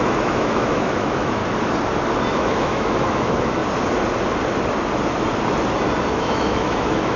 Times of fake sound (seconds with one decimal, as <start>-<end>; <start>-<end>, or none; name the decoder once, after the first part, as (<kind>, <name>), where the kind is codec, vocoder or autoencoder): 0.0-1.4 (autoencoder, DAC-VAE); 2.3-3.6; 6.1-7.2